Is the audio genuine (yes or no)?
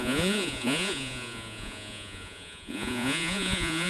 no